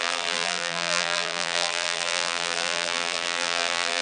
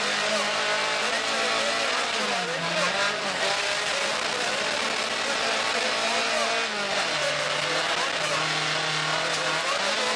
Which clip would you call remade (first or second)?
first